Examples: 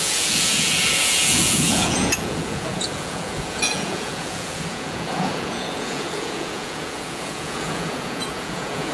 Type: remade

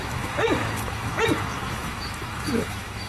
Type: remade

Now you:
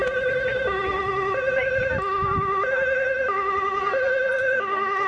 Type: recorded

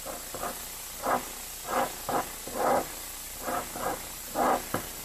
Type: recorded